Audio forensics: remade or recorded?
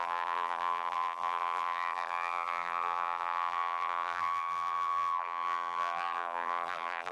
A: remade